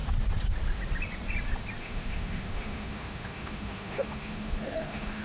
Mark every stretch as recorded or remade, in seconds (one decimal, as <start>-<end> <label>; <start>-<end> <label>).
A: 0.0-1.8 recorded; 1.8-5.2 remade